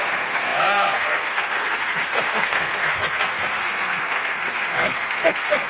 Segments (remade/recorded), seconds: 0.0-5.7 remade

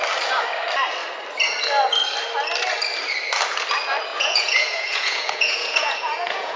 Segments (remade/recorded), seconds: 0.0-4.1 recorded; 4.1-6.6 remade

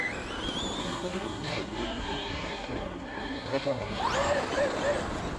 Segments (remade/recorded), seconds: 0.0-0.8 recorded; 0.8-4.0 remade; 4.0-5.4 recorded

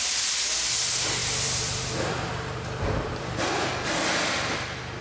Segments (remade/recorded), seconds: 0.0-1.2 recorded; 1.2-3.7 remade; 3.7-5.0 recorded

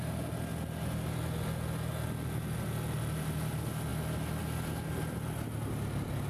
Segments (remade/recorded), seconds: 0.0-6.3 recorded

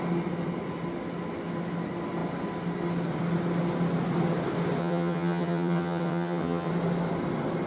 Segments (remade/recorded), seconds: 0.0-4.8 recorded; 4.8-6.7 remade; 6.7-7.7 recorded

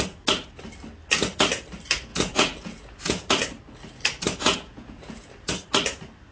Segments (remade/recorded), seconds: 0.0-2.1 recorded; 2.1-3.3 remade; 3.3-4.4 recorded; 4.4-5.5 remade; 5.5-6.3 recorded